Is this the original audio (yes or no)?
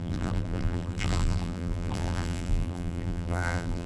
no